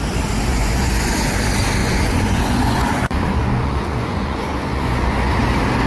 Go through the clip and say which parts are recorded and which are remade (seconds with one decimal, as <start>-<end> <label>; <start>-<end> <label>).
0.0-0.5 recorded; 0.5-1.3 remade; 1.3-1.8 recorded; 1.8-5.3 remade; 5.3-5.9 recorded